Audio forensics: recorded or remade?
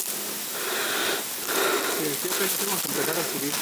recorded